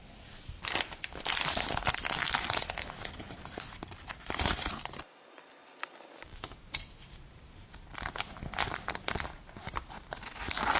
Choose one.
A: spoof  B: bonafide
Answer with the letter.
B